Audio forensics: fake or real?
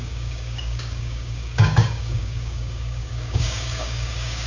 fake